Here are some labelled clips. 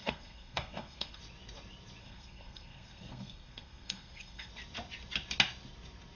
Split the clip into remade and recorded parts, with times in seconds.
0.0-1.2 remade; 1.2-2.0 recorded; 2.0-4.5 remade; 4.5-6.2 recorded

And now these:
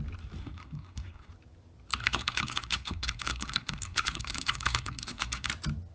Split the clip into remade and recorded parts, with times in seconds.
0.0-0.4 recorded; 0.4-1.3 remade; 1.3-2.0 recorded; 2.0-5.5 remade; 5.5-5.9 recorded

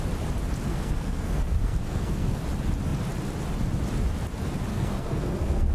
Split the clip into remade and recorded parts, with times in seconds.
0.0-0.7 recorded; 0.7-2.4 remade; 2.4-4.7 recorded; 4.7-5.7 remade

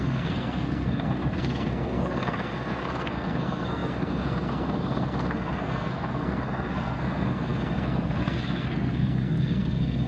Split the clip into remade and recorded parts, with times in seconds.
0.0-10.1 remade

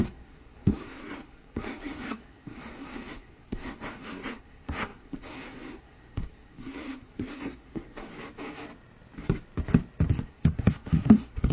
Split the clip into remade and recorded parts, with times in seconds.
0.0-8.1 remade; 8.1-10.1 recorded; 10.1-11.5 remade

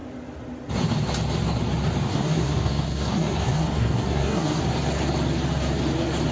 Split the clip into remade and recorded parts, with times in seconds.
0.0-2.1 recorded; 2.1-4.6 remade; 4.6-6.3 recorded

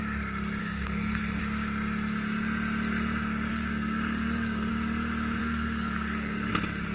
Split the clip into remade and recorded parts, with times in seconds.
0.0-0.6 recorded; 0.6-1.4 remade; 1.4-3.5 recorded; 3.5-4.7 remade; 4.7-5.4 recorded; 5.4-6.5 remade; 6.5-6.9 recorded

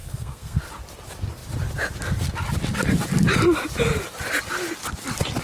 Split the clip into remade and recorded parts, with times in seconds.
0.0-0.6 remade; 0.6-5.4 recorded